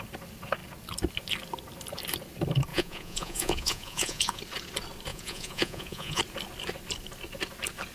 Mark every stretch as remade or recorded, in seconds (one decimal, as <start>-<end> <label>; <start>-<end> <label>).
0.0-2.7 recorded; 2.7-4.4 remade; 4.4-5.1 recorded; 5.1-6.2 remade; 6.2-7.9 recorded